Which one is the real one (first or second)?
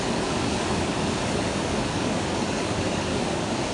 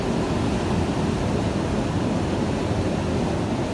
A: second